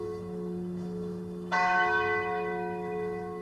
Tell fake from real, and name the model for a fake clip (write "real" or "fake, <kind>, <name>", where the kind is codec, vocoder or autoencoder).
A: fake, autoencoder, DAC-VAE